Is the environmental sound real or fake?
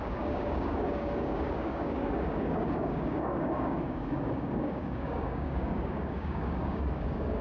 fake